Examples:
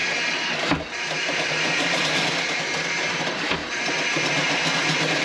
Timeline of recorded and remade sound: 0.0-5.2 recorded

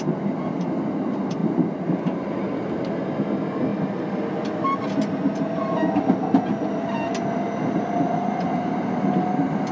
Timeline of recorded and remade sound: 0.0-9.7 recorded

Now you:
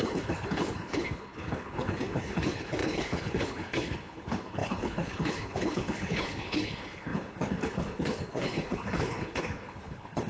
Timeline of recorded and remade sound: 0.0-10.3 remade

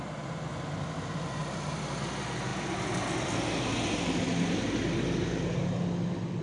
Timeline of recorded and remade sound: 0.0-6.4 recorded

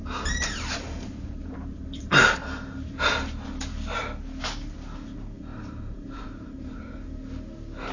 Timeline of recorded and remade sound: 0.0-3.1 remade; 3.1-5.5 recorded; 5.5-6.8 remade; 6.8-7.9 recorded